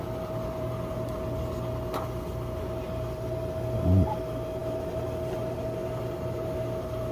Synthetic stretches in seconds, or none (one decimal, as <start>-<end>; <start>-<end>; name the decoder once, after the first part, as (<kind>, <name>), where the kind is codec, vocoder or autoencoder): none